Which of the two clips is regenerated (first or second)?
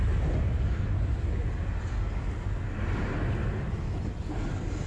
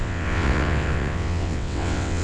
second